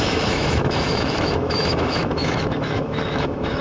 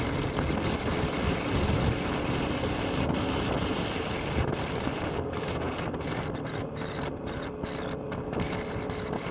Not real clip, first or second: first